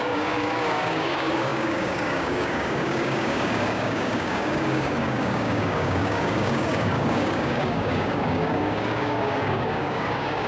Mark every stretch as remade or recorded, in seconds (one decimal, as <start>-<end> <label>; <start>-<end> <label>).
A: 0.0-10.5 remade